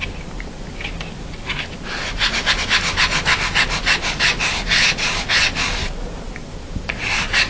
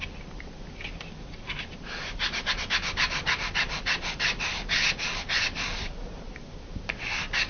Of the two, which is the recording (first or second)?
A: first